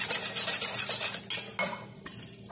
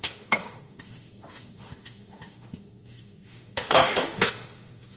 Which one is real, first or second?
first